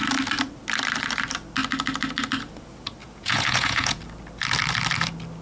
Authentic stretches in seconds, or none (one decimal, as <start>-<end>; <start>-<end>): 0.0-3.0; 4.0-5.4